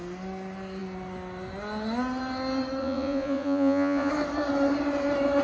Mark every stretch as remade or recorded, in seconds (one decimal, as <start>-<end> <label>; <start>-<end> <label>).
0.0-2.8 recorded; 2.8-4.1 remade; 4.1-5.4 recorded